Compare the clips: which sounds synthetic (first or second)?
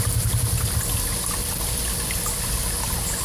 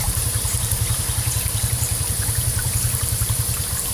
second